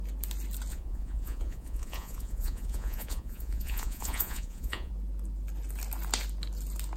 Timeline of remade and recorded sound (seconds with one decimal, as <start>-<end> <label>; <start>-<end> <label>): 0.0-0.7 recorded; 0.7-4.9 remade; 4.9-7.0 recorded